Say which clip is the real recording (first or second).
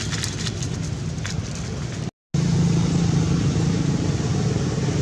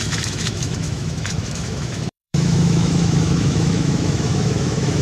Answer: first